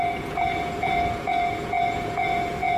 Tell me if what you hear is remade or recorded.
remade